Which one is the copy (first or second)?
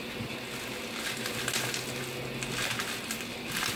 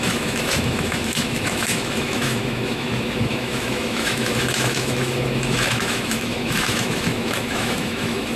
second